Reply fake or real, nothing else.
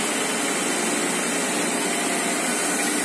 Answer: real